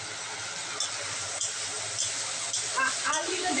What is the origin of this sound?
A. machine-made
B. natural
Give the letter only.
B